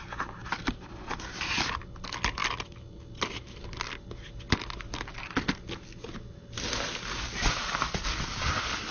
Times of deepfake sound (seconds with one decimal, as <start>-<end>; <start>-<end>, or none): none